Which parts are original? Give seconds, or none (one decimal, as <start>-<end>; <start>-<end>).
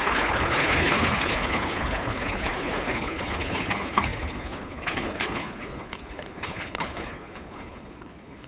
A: none